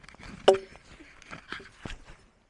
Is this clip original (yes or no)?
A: yes